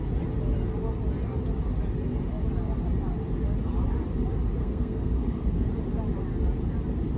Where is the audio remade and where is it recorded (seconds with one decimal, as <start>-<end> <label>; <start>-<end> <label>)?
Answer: 0.0-4.6 recorded; 4.6-5.7 remade; 5.7-7.2 recorded